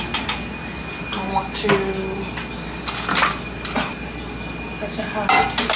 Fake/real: real